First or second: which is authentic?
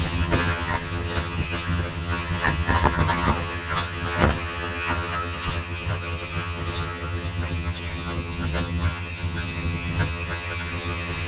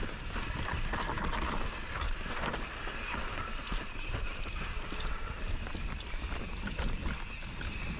second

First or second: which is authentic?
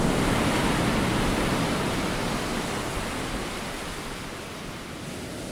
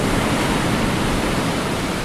first